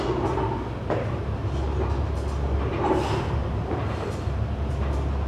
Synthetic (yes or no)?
no